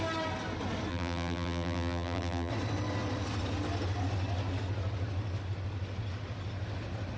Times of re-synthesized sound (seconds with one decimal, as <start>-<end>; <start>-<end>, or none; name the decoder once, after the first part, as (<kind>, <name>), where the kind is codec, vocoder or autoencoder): 0.9-2.5 (vocoder, BigVGAN v2)